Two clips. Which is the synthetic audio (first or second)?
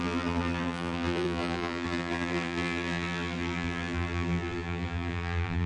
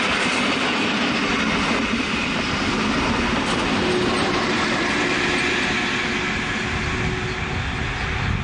first